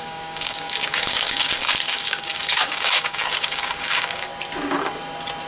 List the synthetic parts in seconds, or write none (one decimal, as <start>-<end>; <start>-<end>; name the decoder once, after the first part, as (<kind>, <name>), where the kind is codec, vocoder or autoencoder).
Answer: 0.0-4.3 (codec, DAC)